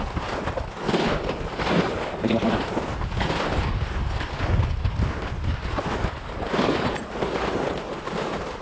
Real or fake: real